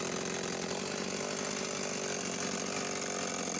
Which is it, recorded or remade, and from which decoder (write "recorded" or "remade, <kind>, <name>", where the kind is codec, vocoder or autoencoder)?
recorded